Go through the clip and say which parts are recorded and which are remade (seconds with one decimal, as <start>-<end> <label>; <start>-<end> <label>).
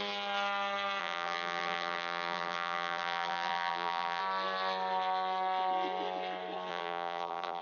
0.0-1.0 recorded; 1.0-4.2 remade; 4.2-6.7 recorded; 6.7-7.6 remade